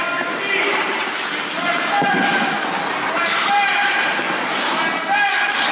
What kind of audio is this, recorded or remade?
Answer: recorded